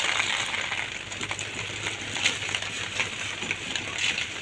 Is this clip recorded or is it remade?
recorded